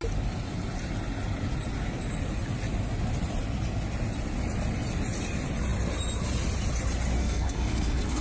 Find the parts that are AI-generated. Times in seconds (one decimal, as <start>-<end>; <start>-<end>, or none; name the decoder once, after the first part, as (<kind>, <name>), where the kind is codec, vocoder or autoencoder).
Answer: 7.2-8.2 (codec, SNAC)